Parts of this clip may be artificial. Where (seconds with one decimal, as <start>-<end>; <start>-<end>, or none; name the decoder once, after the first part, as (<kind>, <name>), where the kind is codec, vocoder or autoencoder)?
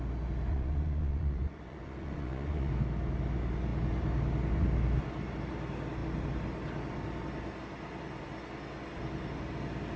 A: 0.5-2.7 (vocoder, Vocos)